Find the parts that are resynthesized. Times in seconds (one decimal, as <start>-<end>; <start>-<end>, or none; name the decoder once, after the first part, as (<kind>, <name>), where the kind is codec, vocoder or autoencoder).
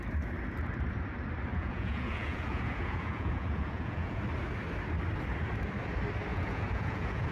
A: 1.5-4.2 (vocoder, Vocos); 6.3-7.3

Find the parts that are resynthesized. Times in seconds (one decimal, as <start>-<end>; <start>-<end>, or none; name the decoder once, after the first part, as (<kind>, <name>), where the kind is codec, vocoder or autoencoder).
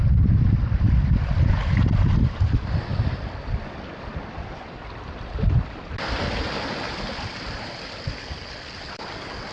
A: none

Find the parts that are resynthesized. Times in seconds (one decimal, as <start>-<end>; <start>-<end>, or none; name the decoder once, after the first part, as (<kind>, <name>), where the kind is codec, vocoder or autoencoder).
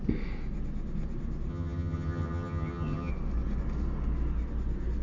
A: 1.5-3.1 (vocoder, HiFi-GAN)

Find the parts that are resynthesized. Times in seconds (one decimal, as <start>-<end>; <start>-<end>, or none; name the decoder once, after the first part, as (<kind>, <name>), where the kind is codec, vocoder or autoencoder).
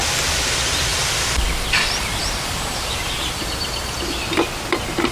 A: 0.9-4.0 (vocoder, BigVGAN v2)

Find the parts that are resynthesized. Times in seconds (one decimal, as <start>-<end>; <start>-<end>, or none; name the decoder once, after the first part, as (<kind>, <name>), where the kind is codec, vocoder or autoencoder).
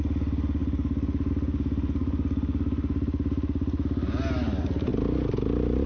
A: none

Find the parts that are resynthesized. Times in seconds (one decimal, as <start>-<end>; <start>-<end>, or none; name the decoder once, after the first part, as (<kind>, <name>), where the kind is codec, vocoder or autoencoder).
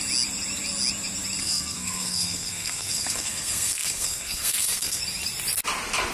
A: 1.4-5.0 (codec, SNAC)